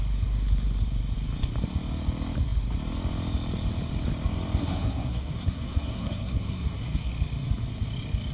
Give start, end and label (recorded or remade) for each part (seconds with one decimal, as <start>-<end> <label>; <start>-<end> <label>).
0.0-4.6 recorded; 4.6-7.1 remade; 7.1-8.3 recorded